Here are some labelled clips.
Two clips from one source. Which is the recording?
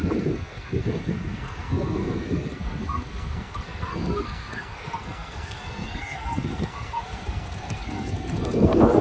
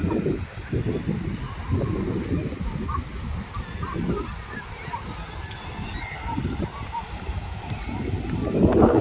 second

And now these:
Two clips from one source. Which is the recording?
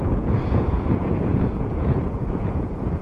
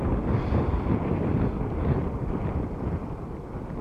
second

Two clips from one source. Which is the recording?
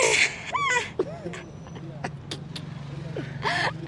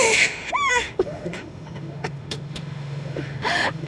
first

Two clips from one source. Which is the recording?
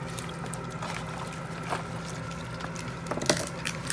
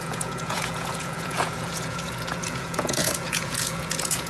first